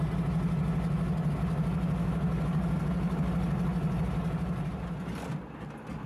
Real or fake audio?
real